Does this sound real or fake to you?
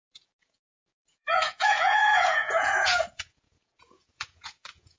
fake